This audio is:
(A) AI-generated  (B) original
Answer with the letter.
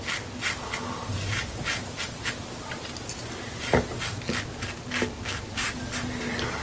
B